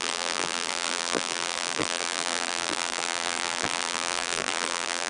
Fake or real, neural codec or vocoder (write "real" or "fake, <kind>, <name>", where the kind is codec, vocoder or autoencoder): fake, vocoder, BigVGAN v2